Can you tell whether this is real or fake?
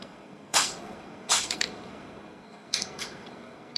fake